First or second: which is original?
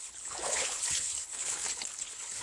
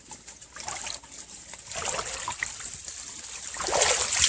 second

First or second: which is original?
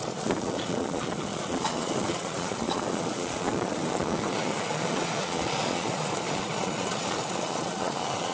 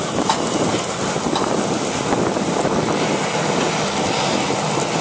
second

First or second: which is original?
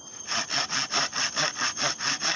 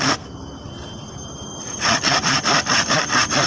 first